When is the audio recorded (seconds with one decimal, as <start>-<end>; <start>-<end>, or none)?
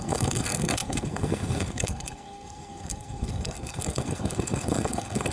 none